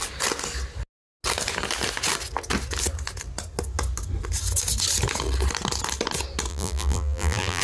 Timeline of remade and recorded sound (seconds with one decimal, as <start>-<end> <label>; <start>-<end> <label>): 0.0-6.5 recorded; 6.5-7.6 remade